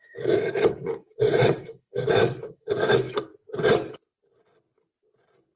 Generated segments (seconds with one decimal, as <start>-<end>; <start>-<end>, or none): 0.0-3.3